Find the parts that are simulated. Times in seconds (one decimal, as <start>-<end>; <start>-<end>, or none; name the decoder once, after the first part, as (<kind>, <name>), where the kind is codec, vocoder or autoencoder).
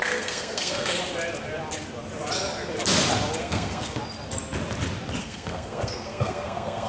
0.0-1.0 (codec, SNAC); 3.4-4.0; 5.2-6.9